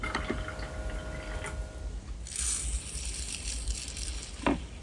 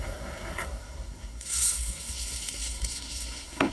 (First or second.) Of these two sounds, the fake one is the second